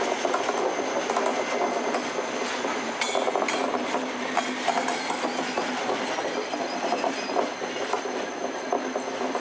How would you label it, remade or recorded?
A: recorded